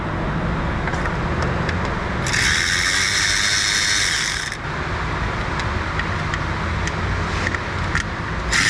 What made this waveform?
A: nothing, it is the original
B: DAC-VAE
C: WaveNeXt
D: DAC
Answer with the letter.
A